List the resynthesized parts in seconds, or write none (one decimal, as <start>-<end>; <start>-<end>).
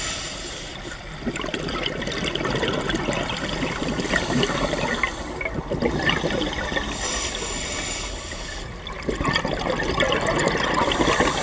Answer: none